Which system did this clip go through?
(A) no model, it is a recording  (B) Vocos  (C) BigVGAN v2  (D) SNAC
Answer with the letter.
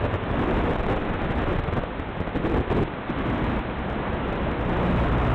A